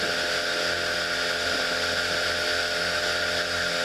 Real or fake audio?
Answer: real